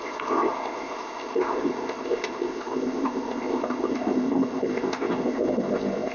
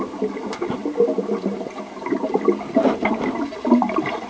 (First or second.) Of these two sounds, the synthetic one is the first